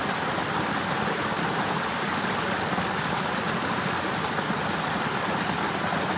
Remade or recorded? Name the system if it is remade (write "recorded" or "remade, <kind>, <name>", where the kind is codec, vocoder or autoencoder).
recorded